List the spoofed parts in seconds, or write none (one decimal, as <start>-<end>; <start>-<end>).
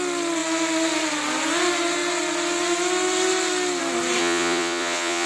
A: 4.2-5.3